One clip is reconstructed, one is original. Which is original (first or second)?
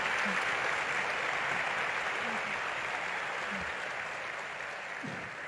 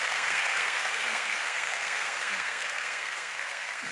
first